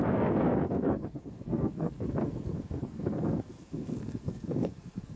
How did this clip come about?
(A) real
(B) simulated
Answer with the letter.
B